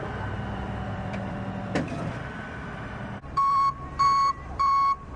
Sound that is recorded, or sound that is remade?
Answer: remade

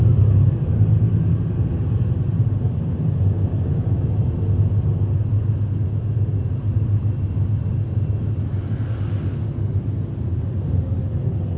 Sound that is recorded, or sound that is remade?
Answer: recorded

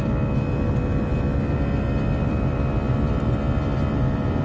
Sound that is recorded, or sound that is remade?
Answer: recorded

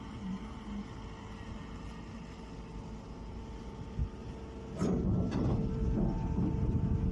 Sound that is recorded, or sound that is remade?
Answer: recorded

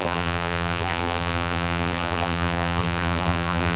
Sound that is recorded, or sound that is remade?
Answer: remade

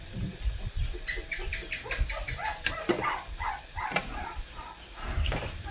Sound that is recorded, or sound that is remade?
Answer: remade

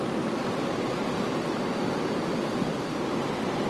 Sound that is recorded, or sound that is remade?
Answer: recorded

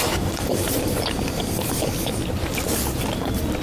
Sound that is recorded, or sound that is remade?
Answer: recorded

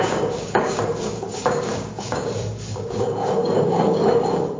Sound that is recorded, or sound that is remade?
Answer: remade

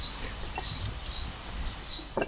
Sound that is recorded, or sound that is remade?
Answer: recorded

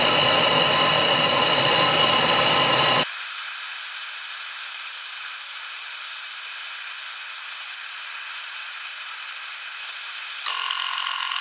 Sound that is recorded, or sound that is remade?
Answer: recorded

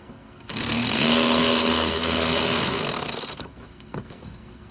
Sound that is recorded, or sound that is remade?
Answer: remade